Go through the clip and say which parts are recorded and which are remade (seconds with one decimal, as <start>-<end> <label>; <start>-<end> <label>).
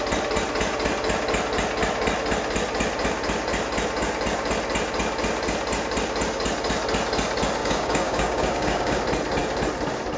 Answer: 0.0-7.6 recorded; 7.6-9.0 remade; 9.0-10.2 recorded